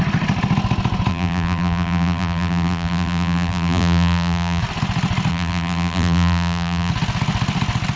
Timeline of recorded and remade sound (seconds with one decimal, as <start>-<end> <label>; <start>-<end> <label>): 0.0-1.1 recorded; 1.1-4.6 remade; 4.6-5.3 recorded; 5.3-6.9 remade; 6.9-8.0 recorded